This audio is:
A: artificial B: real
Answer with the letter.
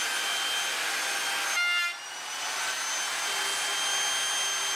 B